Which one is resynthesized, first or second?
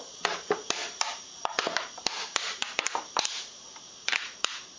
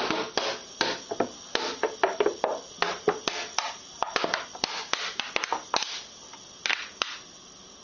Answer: first